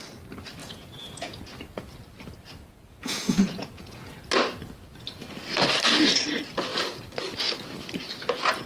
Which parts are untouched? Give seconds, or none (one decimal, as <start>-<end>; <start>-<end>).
0.0-0.6; 1.4-3.0; 4.1-8.7